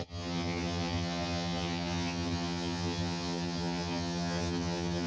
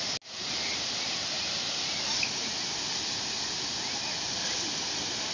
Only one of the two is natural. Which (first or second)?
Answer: second